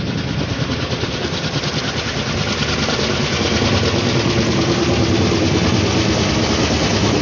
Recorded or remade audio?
recorded